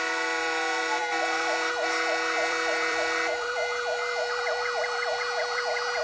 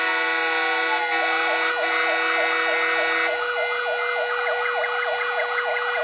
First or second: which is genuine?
second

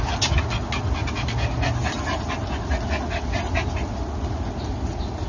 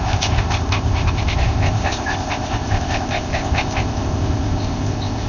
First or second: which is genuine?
first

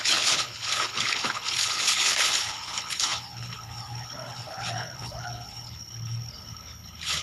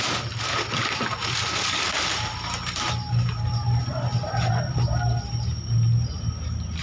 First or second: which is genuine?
second